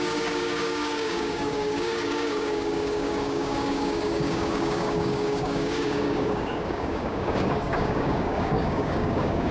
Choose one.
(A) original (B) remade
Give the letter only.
B